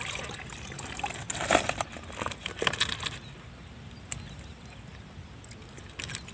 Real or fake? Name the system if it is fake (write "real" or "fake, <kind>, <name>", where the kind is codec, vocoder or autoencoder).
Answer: real